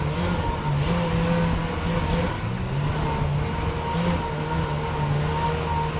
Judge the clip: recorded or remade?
recorded